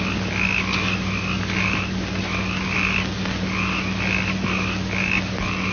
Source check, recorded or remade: recorded